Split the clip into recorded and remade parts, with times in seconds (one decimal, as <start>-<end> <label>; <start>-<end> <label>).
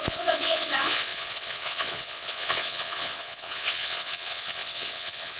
0.0-5.4 remade